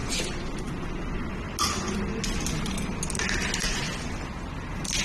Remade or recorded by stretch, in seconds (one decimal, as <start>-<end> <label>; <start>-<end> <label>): 0.0-5.0 recorded